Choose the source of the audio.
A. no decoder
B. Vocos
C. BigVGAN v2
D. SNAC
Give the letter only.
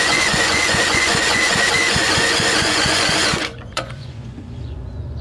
B